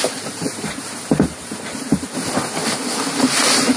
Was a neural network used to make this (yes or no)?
yes